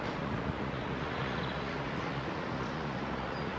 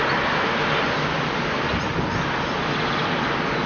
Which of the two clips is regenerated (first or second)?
first